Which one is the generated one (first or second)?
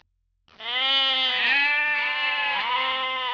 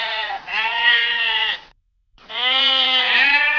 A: second